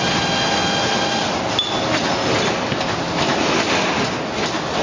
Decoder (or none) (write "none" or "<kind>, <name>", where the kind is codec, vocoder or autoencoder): none